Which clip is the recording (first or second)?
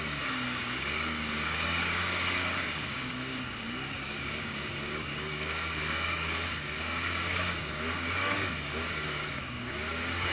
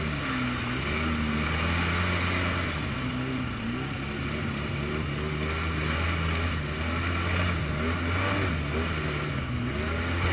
second